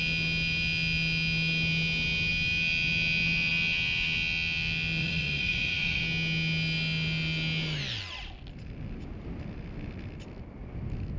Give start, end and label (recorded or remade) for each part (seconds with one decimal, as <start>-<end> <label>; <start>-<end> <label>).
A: 0.0-5.0 recorded; 5.0-6.0 remade; 6.0-11.2 recorded